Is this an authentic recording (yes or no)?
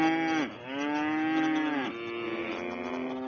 yes